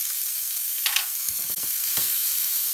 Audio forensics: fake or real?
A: fake